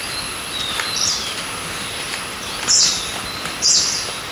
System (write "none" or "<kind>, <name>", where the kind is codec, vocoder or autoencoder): none